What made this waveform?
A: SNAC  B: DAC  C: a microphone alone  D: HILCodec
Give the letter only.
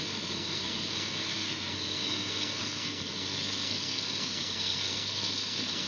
A